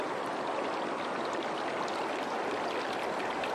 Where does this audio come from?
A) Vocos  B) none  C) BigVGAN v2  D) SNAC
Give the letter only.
B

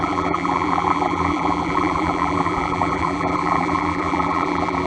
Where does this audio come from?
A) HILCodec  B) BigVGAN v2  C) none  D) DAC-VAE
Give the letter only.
B